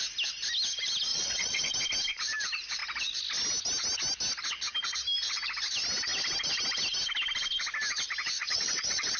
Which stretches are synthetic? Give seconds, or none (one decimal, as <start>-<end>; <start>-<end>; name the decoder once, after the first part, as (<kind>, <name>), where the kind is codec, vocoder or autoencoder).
1.1-1.7 (vocoder, Vocos); 8.4-9.2